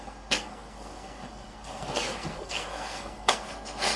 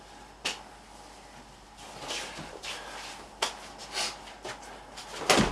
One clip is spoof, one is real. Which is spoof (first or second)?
first